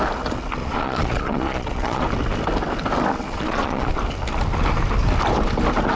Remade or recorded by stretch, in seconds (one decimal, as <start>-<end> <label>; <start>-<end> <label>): 0.0-0.6 recorded; 0.6-2.0 remade; 2.0-3.3 recorded; 3.3-3.9 remade; 3.9-6.0 recorded